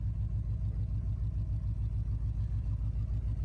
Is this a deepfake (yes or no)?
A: no